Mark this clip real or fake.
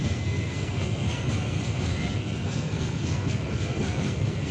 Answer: fake